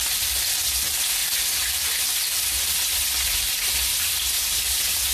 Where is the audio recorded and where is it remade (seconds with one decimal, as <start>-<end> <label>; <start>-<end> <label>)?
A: 0.0-5.1 recorded